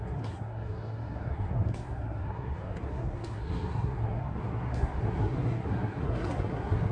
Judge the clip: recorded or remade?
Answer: remade